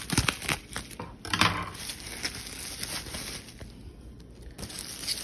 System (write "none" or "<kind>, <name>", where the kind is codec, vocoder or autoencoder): none